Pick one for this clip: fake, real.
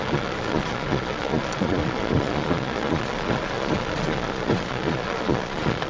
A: fake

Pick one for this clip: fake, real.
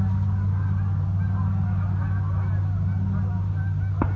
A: real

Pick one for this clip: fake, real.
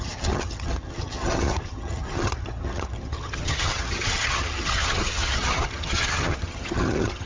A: fake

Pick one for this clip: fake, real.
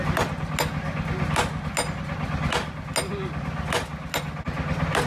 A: real